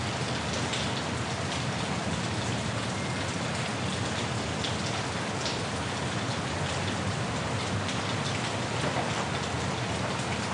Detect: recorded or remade recorded